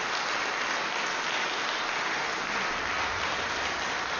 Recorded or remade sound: recorded